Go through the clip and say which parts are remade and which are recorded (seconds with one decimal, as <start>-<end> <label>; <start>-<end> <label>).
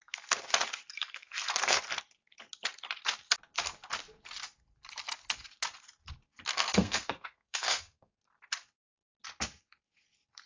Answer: 0.0-0.9 recorded; 0.9-1.8 remade; 1.8-6.5 recorded; 6.5-8.2 remade; 8.2-10.5 recorded